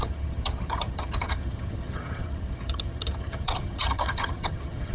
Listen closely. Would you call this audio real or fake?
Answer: fake